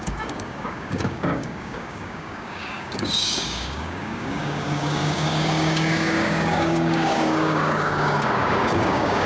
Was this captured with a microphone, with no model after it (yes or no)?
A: no